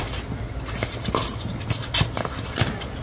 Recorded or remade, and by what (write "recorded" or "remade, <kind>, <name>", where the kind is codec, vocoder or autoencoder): recorded